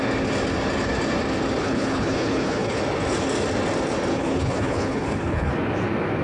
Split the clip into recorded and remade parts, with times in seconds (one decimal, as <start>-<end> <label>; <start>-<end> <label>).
0.0-1.6 recorded; 1.6-2.8 remade; 2.8-4.1 recorded; 4.1-5.5 remade; 5.5-6.2 recorded